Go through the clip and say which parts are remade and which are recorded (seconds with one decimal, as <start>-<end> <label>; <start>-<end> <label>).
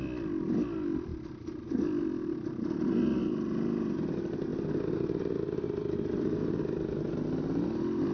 0.0-8.1 recorded